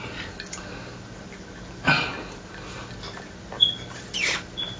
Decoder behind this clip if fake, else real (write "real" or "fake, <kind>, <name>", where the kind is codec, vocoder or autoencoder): real